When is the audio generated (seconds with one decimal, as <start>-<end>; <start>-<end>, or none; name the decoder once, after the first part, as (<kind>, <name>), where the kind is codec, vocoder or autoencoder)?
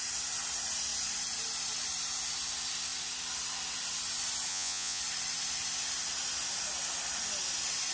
4.5-5.0 (vocoder, Vocos)